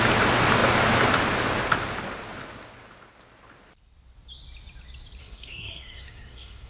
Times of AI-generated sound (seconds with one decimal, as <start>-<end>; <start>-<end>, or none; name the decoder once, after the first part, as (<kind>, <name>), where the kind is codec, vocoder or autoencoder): 5.2-6.7 (codec, SNAC)